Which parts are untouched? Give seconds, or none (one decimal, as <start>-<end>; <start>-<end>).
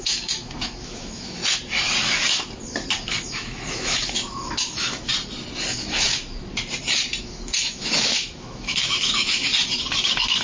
1.4-3.0; 5.1-5.7; 6.2-7.2; 9.5-10.4